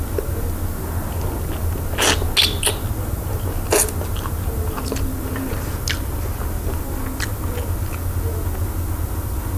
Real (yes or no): yes